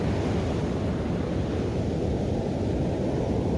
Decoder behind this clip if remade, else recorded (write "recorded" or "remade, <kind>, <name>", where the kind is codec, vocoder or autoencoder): recorded